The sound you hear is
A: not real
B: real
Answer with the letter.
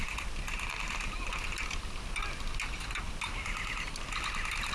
B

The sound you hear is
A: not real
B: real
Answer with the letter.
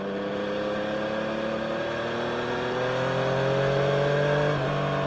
B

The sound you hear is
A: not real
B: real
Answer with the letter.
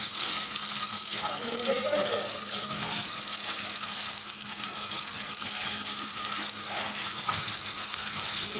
A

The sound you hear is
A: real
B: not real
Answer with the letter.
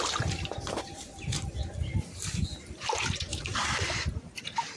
B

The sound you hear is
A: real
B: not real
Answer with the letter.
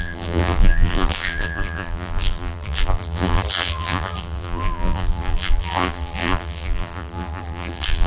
B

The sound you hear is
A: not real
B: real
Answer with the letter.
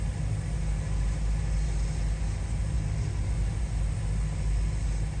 B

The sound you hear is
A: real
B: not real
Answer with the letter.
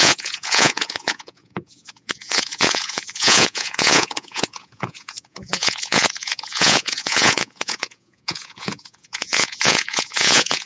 B